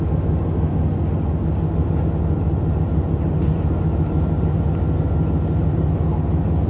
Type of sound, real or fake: real